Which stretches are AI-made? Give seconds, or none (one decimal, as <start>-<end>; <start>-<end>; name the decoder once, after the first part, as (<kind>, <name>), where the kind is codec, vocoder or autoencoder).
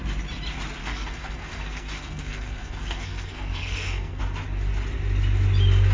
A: 0.8-4.2 (codec, SNAC)